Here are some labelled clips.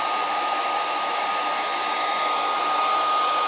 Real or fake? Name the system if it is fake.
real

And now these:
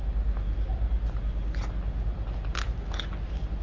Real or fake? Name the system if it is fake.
real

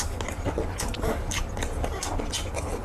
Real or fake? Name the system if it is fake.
real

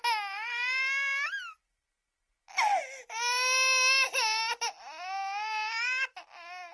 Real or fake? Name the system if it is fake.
real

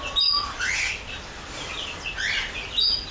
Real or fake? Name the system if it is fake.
real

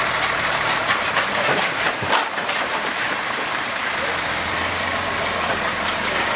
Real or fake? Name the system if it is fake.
fake, vocoder, BigVGAN v2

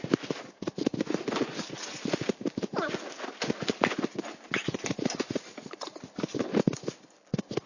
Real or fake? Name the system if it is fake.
real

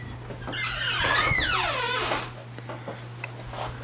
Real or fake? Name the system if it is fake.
real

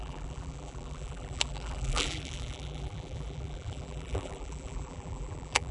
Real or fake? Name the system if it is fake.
fake, vocoder, BigVGAN v2